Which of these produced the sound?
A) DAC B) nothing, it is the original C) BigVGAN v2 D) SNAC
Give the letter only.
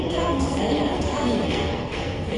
D